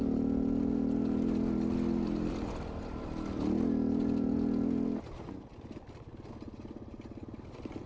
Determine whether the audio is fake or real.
real